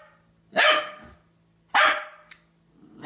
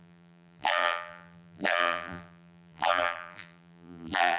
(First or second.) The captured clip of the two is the first